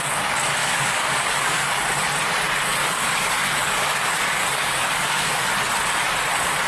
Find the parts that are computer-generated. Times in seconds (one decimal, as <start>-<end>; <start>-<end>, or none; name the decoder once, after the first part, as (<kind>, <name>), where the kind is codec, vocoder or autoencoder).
0.6-1.8 (codec, DAC); 2.8-5.5

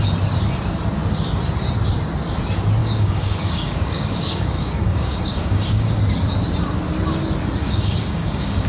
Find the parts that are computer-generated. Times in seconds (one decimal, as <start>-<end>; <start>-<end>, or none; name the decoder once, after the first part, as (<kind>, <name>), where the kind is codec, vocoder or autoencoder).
2.8-6.0 (codec, DAC); 7.6-8.7

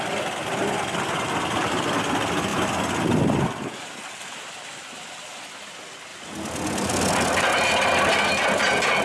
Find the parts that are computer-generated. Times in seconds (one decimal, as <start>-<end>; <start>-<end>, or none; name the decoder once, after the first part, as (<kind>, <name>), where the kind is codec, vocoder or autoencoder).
none

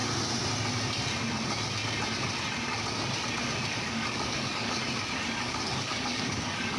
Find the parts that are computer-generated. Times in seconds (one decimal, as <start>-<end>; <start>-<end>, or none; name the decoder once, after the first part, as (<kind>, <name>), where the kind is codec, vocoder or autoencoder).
3.7-4.8 (codec, DAC); 5.4-6.8

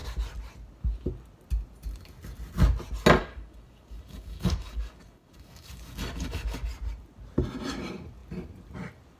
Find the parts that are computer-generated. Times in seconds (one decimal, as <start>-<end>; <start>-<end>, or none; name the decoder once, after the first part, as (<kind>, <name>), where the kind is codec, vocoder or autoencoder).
3.2-6.7 (codec, DAC)

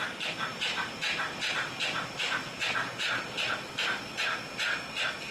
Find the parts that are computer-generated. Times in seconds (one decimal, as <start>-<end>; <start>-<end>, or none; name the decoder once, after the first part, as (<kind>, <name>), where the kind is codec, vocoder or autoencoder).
none